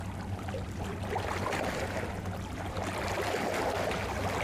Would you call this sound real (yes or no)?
yes